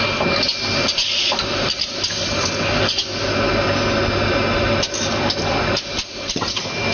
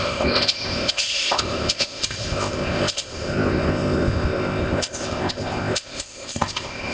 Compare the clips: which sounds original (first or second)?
first